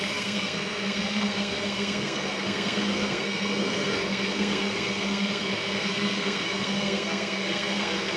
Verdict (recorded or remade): remade